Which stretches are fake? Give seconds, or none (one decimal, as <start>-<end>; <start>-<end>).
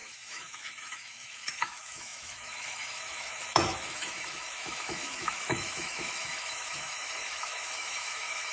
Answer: 0.0-8.5